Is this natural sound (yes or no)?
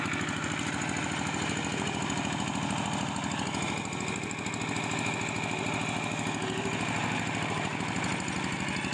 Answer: yes